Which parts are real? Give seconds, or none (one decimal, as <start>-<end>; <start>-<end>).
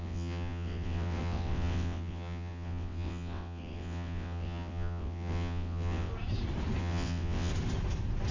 6.1-6.8; 7.5-8.3